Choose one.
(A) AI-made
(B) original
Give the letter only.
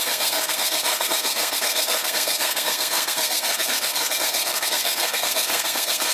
A